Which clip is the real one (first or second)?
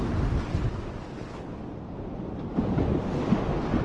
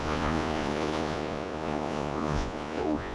first